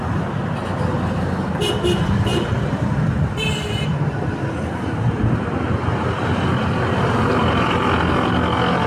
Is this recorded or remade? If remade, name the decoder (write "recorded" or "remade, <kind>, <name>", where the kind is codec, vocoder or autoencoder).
recorded